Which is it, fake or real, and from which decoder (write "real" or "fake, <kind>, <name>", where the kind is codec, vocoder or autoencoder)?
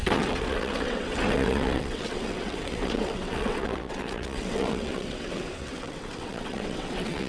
fake, vocoder, WaveNeXt